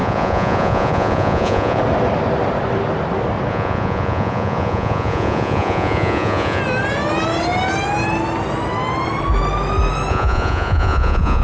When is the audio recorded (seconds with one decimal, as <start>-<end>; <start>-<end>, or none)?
1.8-3.5; 6.6-10.1